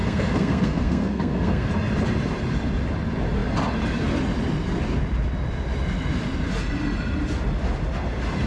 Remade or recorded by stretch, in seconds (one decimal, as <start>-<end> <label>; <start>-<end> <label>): 0.0-1.7 remade; 1.7-8.5 recorded